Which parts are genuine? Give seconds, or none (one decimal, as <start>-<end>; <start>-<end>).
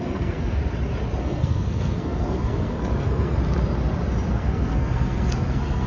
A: 0.6-1.2; 3.4-4.3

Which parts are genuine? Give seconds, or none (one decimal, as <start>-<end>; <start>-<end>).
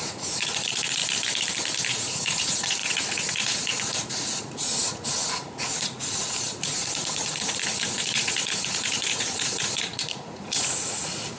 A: 1.0-1.9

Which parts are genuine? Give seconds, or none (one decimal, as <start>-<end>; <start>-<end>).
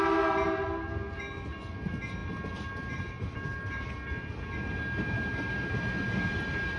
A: 0.0-6.8